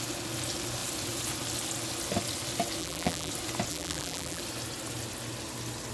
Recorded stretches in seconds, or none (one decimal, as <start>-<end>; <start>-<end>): 0.0-2.8; 3.3-3.7; 4.4-5.9